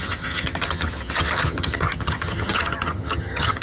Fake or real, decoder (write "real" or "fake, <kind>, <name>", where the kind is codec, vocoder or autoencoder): fake, vocoder, HiFi-GAN